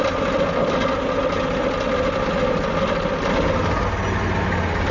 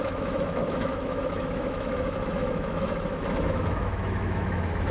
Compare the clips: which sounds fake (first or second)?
second